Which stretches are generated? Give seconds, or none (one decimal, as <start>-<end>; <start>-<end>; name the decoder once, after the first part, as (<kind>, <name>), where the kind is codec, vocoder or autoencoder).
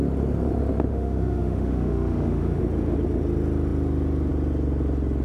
0.9-2.6 (autoencoder, DAC-VAE)